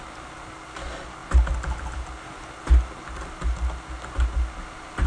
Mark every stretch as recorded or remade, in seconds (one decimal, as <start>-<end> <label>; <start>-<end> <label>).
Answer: 0.0-5.1 recorded